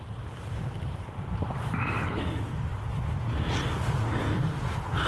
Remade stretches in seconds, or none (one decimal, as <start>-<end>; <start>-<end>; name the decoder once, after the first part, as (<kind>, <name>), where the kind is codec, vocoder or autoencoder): 0.0-2.7 (vocoder, BigVGAN v2); 4.2-5.1